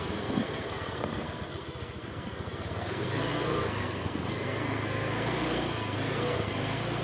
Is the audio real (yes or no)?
no